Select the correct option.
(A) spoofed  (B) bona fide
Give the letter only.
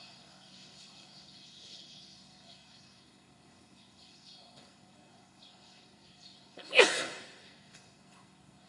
A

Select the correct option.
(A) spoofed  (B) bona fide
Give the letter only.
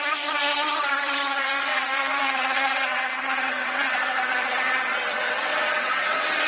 A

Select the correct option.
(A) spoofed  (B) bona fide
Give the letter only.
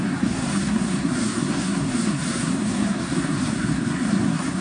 A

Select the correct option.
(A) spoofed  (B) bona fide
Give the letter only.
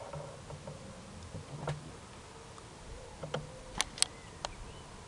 B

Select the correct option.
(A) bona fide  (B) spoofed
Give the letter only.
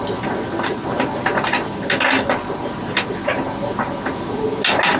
A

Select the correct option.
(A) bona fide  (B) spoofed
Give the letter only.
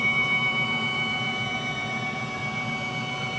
B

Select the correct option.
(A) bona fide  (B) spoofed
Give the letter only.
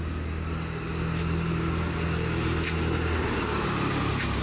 A